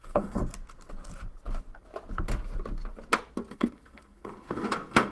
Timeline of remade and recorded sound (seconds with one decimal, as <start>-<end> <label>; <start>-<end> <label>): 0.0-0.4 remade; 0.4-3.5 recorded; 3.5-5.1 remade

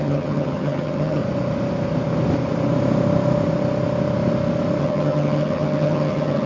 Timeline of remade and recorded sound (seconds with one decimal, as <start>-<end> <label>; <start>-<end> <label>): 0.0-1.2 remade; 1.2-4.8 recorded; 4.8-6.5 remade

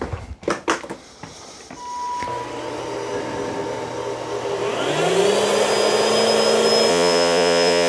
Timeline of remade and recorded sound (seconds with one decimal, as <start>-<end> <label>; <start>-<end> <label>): 0.0-6.9 recorded; 6.9-7.9 remade